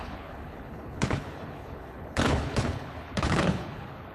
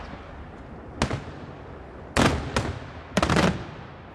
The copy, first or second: first